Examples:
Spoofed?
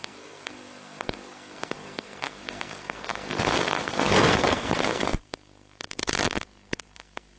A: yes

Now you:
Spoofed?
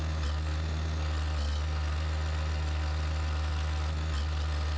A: no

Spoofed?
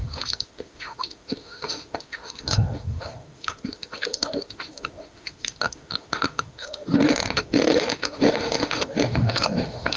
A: yes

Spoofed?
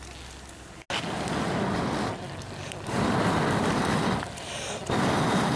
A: no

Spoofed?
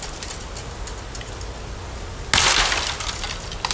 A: no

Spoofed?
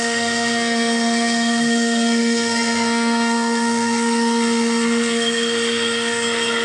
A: yes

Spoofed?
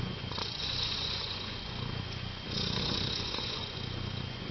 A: yes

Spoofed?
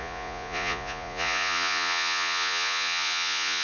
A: yes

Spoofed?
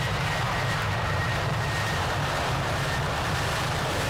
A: yes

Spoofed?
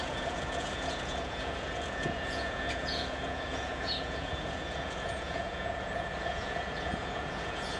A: yes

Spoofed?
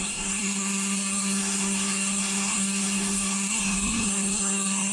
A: yes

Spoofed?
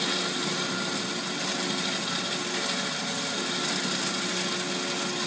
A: no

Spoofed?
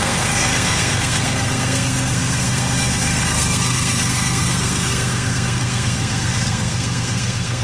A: yes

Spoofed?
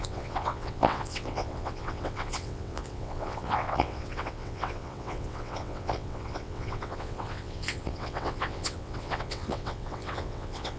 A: yes